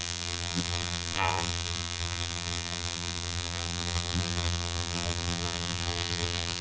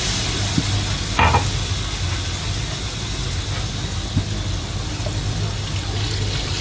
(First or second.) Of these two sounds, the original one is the second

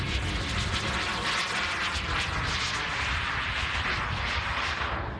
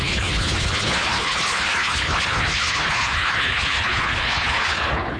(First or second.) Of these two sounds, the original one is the first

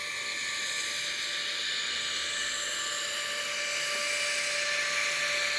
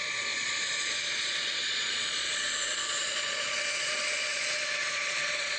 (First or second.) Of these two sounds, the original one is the first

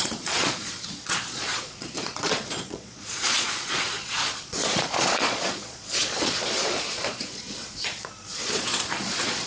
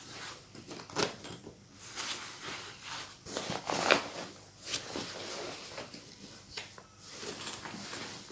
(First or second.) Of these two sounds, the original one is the second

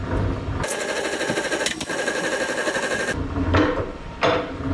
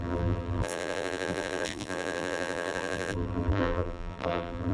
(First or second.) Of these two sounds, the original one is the first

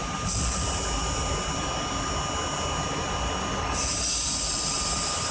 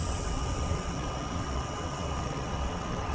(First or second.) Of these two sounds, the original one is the first